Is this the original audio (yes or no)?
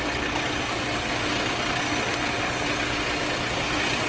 yes